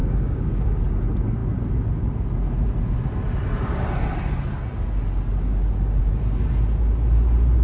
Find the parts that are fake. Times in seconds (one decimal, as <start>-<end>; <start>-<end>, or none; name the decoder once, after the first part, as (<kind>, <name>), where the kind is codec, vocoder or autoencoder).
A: 0.0-0.8 (codec, DAC)